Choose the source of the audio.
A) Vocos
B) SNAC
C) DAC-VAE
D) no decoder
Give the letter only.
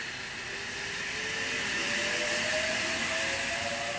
D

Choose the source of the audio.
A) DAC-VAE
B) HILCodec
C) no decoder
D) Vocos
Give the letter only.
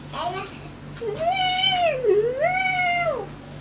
C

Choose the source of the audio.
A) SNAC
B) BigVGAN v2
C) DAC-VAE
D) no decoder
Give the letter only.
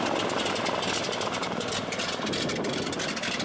D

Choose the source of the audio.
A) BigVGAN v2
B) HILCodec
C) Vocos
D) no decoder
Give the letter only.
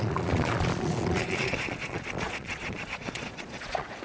C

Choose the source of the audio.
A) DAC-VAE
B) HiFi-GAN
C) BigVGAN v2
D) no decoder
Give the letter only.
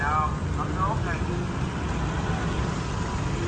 D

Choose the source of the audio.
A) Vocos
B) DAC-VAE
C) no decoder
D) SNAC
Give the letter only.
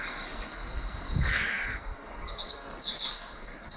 D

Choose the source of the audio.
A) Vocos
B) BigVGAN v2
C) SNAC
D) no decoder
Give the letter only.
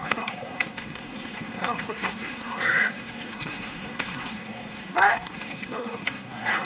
C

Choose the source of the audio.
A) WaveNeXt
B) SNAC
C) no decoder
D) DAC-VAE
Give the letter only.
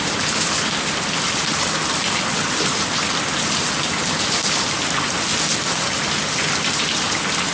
C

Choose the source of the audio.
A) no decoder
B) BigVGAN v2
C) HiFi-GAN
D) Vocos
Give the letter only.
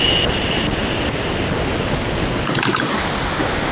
A